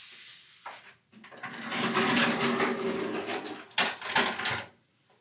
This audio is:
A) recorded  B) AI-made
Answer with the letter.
A